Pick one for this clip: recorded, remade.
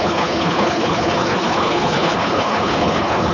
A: remade